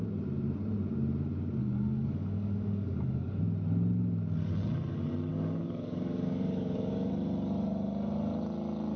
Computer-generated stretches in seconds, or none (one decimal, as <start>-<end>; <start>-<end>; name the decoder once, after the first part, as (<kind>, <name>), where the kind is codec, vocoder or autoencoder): 1.6-3.4 (codec, DAC); 5.3-7.1